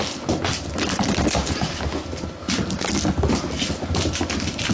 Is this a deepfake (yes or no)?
no